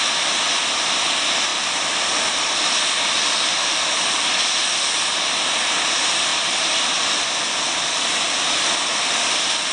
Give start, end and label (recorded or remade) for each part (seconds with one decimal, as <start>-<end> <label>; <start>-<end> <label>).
0.0-1.5 recorded; 1.5-5.3 remade; 5.3-9.7 recorded